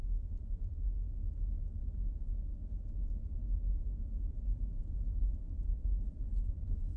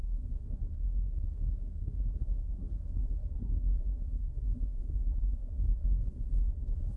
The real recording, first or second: first